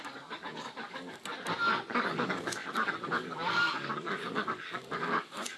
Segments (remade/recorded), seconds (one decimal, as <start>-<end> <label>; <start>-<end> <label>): 0.0-1.3 remade; 1.3-2.1 recorded; 2.1-5.6 remade